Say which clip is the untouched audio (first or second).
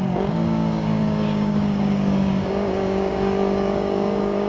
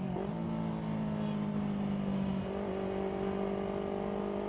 second